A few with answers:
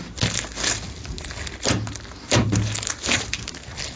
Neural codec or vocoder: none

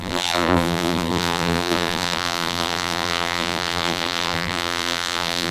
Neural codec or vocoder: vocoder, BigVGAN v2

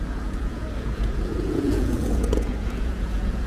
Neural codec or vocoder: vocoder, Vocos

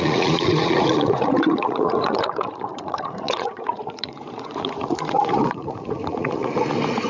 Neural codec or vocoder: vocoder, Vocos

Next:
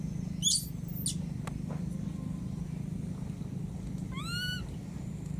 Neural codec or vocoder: none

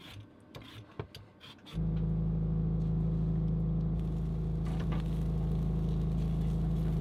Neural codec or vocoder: none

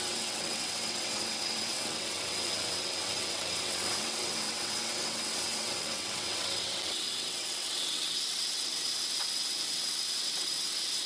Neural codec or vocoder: vocoder, WaveNeXt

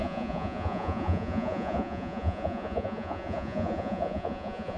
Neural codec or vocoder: vocoder, Vocos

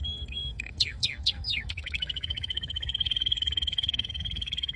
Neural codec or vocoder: codec, SNAC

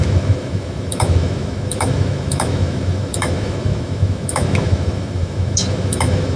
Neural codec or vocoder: autoencoder, DAC-VAE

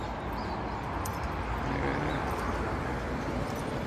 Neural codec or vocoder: none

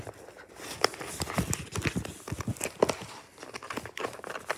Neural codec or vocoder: none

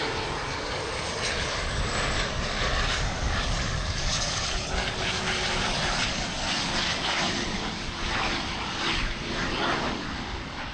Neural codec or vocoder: codec, DAC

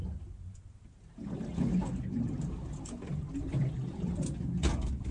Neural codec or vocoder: none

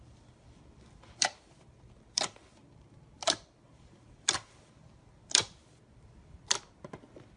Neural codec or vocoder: vocoder, BigVGAN v2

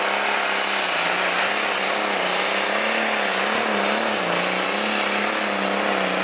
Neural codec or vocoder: none